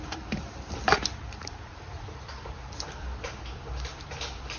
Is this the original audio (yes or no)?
no